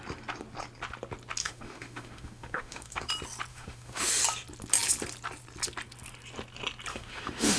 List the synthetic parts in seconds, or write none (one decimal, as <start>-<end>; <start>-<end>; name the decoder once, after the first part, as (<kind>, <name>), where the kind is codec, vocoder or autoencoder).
1.4-3.1 (autoencoder, DAC-VAE); 3.5-4.1; 6.9-7.6